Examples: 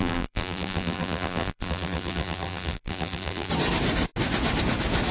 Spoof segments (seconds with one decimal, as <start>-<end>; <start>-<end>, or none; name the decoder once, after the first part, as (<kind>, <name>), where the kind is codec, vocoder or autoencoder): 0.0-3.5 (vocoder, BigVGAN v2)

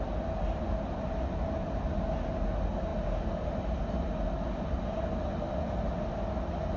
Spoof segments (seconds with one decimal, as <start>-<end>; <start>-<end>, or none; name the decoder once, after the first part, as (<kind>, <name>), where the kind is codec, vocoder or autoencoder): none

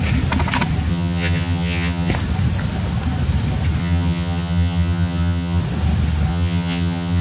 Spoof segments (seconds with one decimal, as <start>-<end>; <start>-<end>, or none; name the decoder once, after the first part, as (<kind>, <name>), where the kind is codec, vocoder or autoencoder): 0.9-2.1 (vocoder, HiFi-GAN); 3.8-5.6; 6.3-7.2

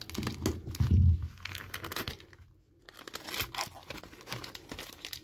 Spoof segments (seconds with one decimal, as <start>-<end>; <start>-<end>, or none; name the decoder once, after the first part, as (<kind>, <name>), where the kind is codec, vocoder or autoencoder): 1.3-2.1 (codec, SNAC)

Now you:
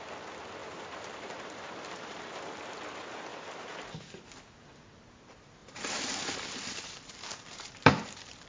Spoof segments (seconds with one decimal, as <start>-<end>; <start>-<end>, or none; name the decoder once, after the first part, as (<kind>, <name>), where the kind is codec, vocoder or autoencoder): 0.6-2.3 (vocoder, BigVGAN v2); 3.3-4.2; 5.6-8.5

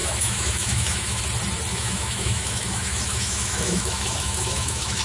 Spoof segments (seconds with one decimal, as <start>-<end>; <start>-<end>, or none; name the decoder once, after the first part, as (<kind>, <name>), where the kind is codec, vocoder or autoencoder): 0.0-1.2 (autoencoder, DAC-VAE); 1.7-5.0

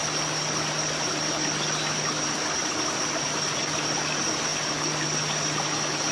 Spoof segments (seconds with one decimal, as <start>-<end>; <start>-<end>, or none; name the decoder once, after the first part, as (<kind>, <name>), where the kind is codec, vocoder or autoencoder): none

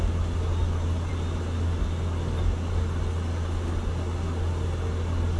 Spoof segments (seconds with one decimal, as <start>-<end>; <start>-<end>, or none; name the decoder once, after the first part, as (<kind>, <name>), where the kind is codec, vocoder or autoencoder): none